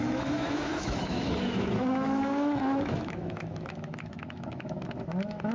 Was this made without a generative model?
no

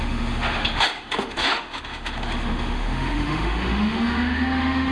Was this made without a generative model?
no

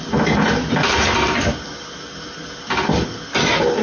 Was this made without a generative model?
yes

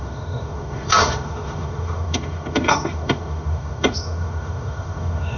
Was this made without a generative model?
no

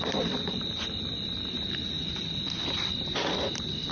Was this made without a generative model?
yes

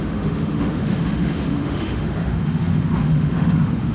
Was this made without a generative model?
no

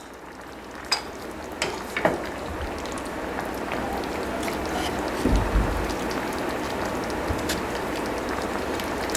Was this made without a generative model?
yes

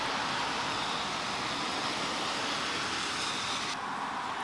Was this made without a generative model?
yes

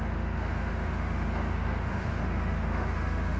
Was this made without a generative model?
no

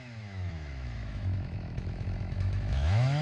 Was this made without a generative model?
no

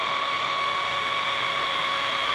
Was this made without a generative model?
no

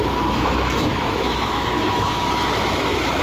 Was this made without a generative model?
no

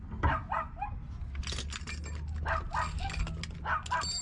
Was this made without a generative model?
yes